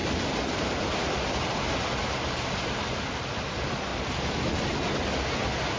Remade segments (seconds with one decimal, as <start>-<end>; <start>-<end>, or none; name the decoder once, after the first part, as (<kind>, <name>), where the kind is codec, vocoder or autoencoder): 0.0-3.5 (vocoder, BigVGAN v2); 3.9-5.1